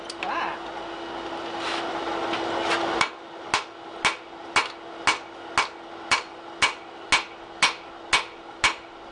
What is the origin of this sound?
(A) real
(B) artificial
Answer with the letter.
A